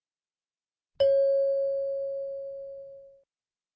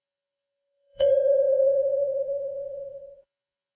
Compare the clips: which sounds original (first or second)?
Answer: first